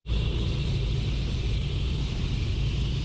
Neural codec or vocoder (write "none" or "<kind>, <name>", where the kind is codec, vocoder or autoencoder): vocoder, BigVGAN v2